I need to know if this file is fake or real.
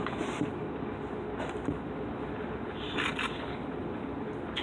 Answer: real